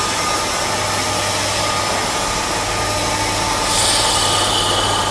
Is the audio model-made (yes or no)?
no